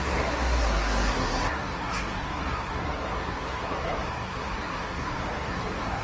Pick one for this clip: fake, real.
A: fake